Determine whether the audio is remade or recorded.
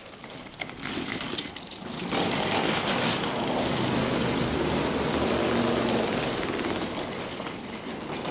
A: recorded